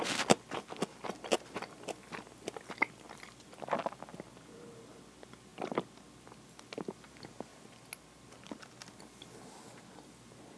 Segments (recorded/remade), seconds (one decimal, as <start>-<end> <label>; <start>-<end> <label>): 0.0-10.6 recorded